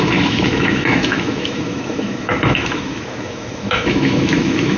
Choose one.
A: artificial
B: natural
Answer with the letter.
A